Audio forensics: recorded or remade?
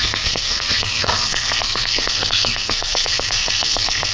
remade